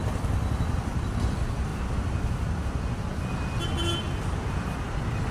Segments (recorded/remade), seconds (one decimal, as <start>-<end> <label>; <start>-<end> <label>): 0.0-5.3 recorded